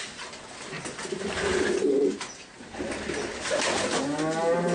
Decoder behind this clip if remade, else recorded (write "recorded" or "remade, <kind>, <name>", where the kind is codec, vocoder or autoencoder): recorded